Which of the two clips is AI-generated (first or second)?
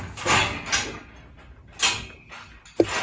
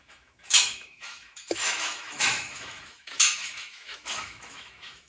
second